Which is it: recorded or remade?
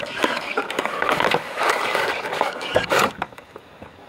remade